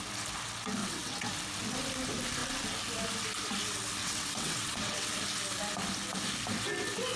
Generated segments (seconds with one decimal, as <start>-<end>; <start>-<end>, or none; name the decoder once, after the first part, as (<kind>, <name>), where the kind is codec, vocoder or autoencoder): 0.8-1.3 (vocoder, WaveNeXt); 4.0-5.1